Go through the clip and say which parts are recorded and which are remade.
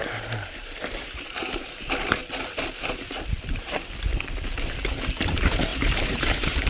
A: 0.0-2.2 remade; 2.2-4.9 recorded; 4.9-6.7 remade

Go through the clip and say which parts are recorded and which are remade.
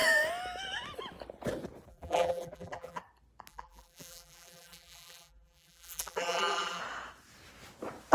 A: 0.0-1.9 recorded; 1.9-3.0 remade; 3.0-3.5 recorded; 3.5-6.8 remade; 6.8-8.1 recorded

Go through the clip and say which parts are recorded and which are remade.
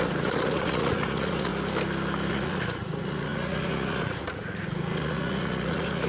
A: 0.0-1.5 remade; 1.5-2.3 recorded; 2.3-6.1 remade